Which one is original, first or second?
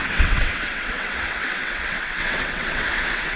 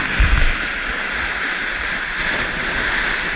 second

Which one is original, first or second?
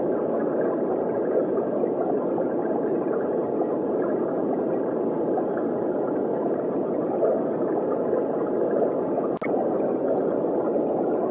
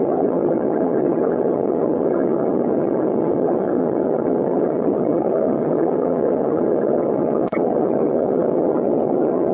first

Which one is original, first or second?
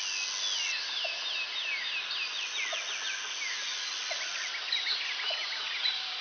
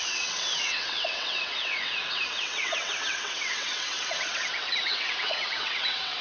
first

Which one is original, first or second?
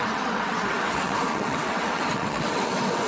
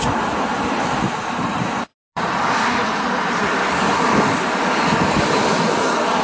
second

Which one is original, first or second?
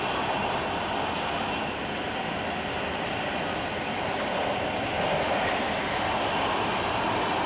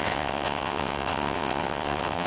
first